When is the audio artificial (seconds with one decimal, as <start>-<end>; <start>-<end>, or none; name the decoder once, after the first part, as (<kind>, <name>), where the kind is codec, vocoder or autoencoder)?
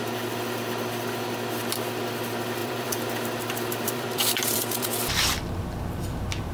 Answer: 2.6-5.1 (vocoder, BigVGAN v2)